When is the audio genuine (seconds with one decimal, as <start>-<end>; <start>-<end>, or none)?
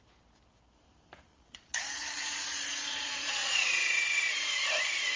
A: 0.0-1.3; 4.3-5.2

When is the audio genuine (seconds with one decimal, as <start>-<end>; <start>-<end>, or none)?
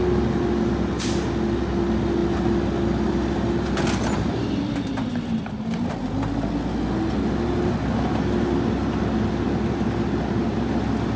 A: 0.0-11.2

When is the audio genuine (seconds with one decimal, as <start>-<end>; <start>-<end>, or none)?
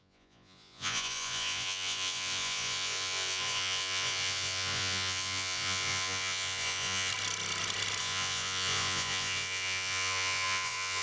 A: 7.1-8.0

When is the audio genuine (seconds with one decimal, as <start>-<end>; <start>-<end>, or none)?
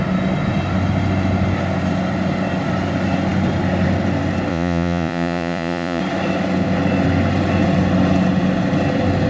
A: 0.0-4.5; 6.0-9.3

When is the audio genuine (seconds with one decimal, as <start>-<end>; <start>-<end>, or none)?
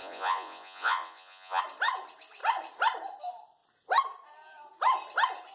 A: 1.6-5.5